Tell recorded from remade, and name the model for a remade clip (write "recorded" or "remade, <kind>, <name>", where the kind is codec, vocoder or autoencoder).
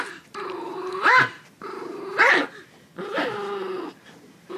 recorded